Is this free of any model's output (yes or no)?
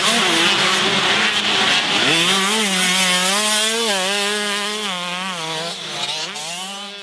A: yes